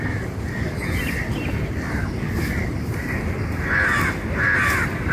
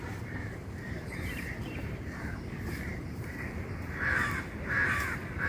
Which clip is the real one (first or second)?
first